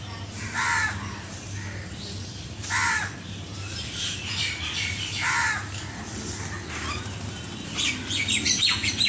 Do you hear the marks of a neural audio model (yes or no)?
yes